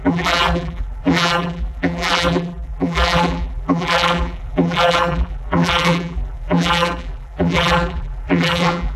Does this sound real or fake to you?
fake